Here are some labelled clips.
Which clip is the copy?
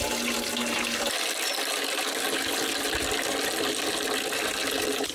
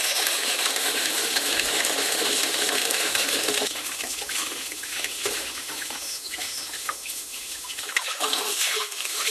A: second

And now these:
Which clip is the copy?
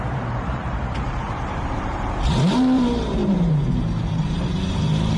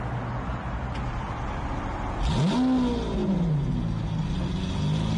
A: first